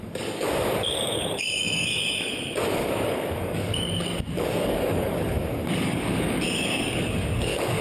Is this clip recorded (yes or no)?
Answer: no